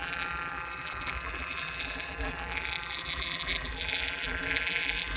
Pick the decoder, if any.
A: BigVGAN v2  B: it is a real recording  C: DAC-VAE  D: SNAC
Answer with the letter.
A